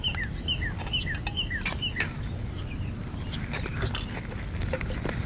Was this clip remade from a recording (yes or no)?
no